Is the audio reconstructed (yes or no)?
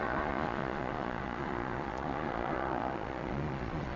yes